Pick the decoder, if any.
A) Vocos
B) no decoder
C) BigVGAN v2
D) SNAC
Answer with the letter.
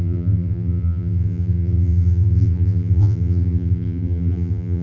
C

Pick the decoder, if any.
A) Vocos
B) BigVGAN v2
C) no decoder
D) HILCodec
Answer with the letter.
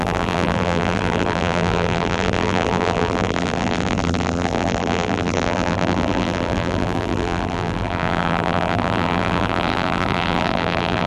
B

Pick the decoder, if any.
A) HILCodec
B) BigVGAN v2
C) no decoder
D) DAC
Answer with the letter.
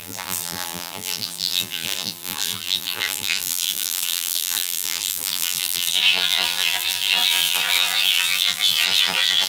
B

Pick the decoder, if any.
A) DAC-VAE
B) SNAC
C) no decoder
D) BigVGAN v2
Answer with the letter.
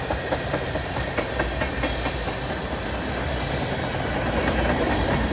C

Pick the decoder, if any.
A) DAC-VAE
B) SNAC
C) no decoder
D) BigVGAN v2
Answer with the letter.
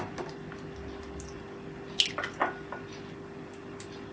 C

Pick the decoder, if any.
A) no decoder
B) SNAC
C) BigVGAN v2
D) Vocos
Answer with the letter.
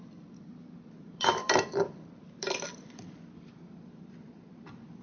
C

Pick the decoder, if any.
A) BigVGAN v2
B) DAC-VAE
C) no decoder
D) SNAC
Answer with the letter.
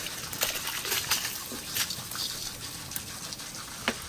C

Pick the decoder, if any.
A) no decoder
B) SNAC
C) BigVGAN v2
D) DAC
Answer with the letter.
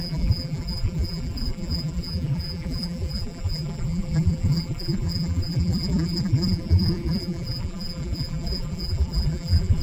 C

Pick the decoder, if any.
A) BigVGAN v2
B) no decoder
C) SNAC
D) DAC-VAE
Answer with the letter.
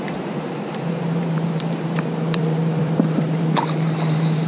A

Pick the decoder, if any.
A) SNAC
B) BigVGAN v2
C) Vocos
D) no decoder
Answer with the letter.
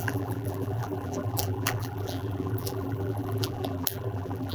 B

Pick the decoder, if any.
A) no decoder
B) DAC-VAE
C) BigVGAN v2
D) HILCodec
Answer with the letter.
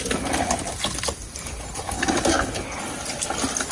A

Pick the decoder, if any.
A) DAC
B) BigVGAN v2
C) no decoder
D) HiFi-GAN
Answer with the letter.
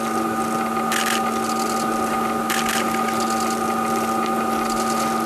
C